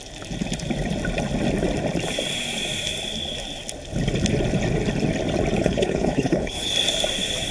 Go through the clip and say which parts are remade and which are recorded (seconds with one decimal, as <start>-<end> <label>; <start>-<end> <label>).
0.0-5.6 recorded; 5.6-6.7 remade; 6.7-7.5 recorded